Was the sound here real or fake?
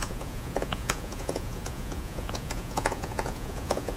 fake